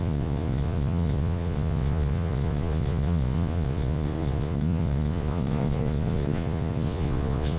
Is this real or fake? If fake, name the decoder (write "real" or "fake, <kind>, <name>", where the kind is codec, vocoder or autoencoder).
fake, vocoder, Vocos